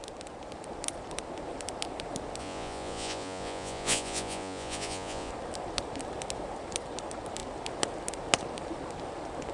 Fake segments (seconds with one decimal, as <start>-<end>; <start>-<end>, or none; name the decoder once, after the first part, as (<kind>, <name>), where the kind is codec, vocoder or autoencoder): 2.4-5.3 (vocoder, Vocos)